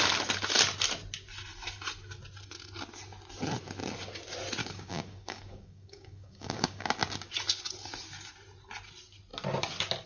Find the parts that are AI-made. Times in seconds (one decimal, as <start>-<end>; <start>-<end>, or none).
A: 4.6-6.9